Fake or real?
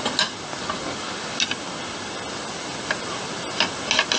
real